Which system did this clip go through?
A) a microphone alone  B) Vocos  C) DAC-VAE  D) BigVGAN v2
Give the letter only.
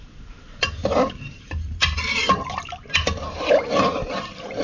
D